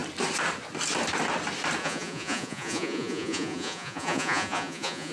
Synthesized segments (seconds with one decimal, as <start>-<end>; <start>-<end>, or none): 1.8-5.1